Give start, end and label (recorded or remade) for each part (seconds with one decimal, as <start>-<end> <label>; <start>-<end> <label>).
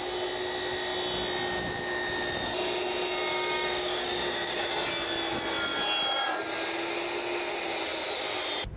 0.0-3.3 recorded; 3.3-4.9 remade; 4.9-8.8 recorded